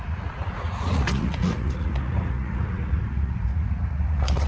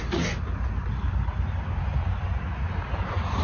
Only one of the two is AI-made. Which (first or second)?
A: first